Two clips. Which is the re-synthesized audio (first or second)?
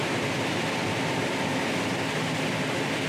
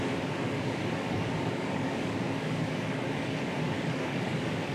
second